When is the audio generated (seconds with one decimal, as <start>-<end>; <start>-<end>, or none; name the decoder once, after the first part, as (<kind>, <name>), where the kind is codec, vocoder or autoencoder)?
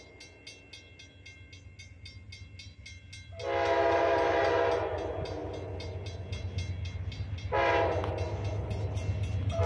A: none